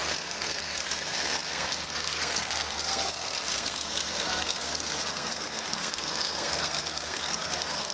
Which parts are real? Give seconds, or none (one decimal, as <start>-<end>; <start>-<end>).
none